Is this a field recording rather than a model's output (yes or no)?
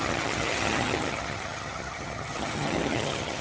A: no